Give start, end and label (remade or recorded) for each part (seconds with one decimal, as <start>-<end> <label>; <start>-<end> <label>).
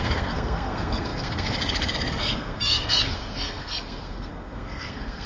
0.0-5.3 remade